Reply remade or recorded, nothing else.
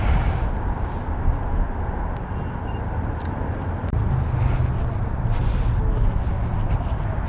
recorded